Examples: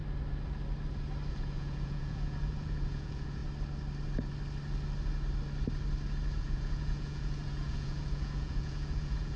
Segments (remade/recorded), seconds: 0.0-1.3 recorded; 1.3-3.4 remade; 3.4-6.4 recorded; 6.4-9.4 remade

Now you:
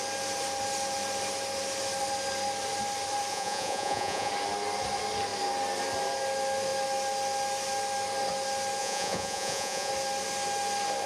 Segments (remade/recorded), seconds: 0.0-3.3 recorded; 3.3-4.3 remade; 4.3-8.8 recorded; 8.8-9.9 remade; 9.9-11.1 recorded

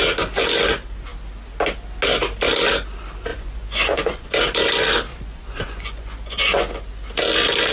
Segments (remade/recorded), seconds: 0.0-3.3 recorded; 3.3-4.3 remade; 4.3-5.1 recorded; 5.1-6.7 remade; 6.7-7.7 recorded

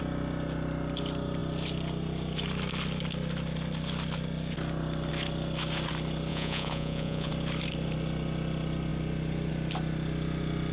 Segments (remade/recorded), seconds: 0.0-6.3 recorded; 6.3-7.3 remade; 7.3-10.7 recorded

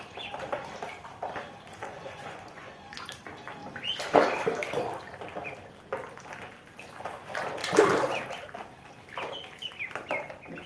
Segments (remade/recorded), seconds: 0.0-1.7 recorded; 1.7-3.1 remade; 3.1-10.7 recorded

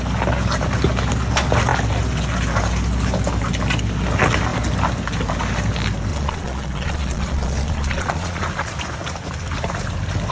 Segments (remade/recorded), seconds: 0.0-6.1 recorded; 6.1-8.4 remade; 8.4-10.3 recorded